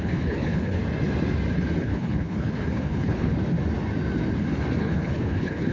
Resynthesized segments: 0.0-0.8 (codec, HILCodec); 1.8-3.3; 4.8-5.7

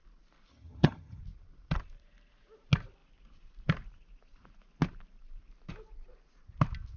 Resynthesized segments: 0.5-1.2 (vocoder, HiFi-GAN)

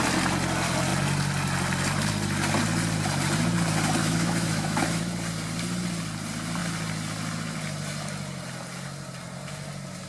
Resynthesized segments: 4.0-5.0 (autoencoder, DAC-VAE)

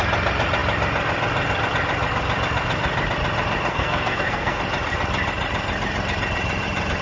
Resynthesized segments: 3.7-4.6 (codec, SNAC)

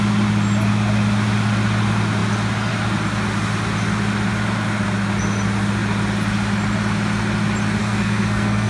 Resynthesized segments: 7.8-8.7 (codec, SNAC)